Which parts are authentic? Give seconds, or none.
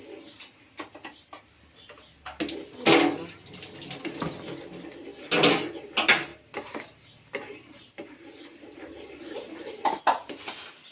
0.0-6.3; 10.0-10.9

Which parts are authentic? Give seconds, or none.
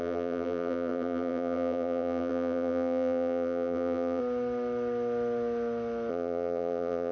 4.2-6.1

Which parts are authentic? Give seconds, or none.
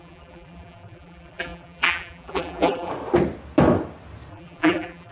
2.9-4.3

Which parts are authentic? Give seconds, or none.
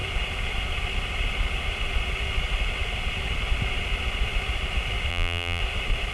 0.0-5.1; 5.6-6.1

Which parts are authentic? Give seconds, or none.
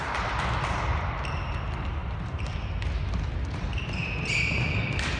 0.0-5.2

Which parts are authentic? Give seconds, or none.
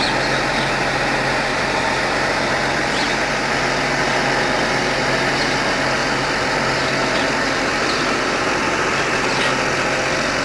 0.0-1.5; 4.8-7.7; 9.3-10.4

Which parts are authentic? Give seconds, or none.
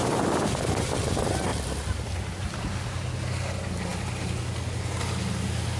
1.1-1.5; 2.7-5.8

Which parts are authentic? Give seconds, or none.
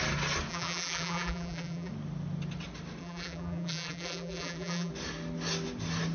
0.0-0.5; 1.9-3.0; 4.9-6.1